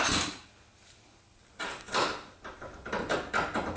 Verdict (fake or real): real